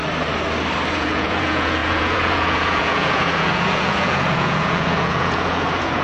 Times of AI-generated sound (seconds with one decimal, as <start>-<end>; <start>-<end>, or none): 0.9-6.0